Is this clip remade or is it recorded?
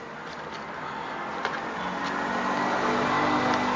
recorded